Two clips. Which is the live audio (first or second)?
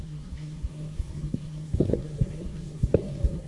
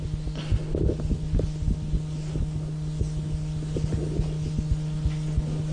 second